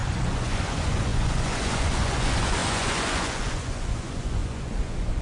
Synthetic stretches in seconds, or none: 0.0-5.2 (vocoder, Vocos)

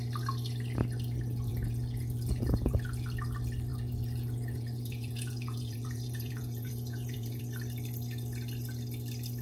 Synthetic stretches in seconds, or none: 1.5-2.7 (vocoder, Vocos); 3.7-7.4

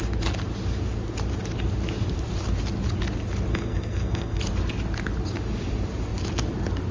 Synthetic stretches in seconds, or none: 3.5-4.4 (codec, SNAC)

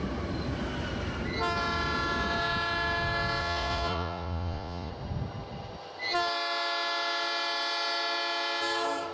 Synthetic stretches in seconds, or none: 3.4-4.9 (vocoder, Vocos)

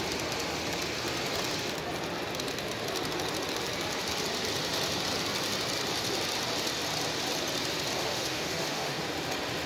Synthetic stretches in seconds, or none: 8.0-9.0 (autoencoder, DAC-VAE)

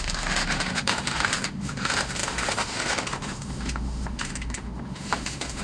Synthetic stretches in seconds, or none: 0.0-5.6 (autoencoder, DAC-VAE)

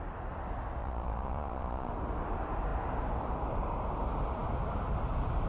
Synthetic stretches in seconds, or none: 0.8-1.9 (vocoder, Vocos)

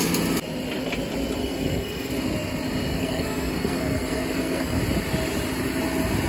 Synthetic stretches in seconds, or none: 1.4-2.1 (codec, SNAC); 2.9-4.8